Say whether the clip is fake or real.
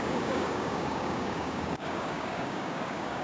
fake